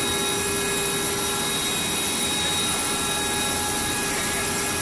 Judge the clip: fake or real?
real